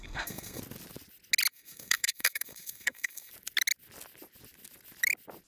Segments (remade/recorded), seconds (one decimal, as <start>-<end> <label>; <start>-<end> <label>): 0.0-0.6 remade; 0.6-1.5 recorded; 1.5-3.3 remade; 3.3-5.5 recorded